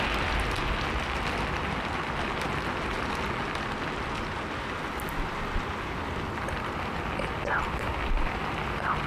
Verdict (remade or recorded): recorded